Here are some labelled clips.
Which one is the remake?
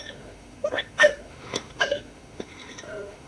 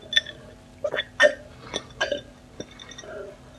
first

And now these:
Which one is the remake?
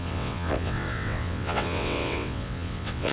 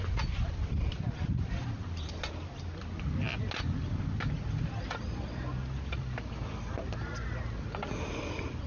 first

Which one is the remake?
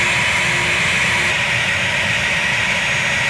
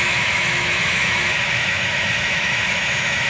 second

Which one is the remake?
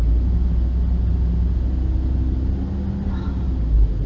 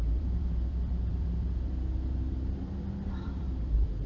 second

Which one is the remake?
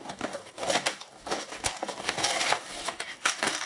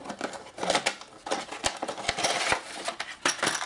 first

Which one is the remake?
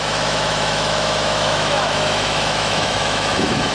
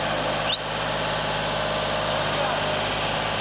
first